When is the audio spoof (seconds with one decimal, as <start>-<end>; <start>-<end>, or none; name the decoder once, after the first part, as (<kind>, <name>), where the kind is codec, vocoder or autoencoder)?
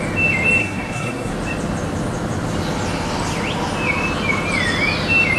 0.6-1.3 (codec, SNAC)